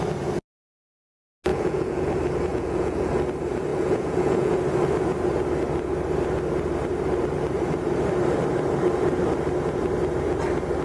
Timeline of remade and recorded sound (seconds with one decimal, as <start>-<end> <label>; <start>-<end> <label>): 0.0-1.5 recorded; 1.5-2.1 remade; 2.1-2.5 recorded; 2.5-3.1 remade; 3.1-3.7 recorded; 3.7-4.6 remade; 4.6-10.8 recorded